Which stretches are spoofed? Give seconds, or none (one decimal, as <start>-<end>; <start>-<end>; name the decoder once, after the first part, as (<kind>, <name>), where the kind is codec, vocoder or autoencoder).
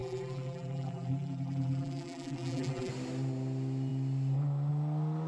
0.0-2.9 (vocoder, BigVGAN v2)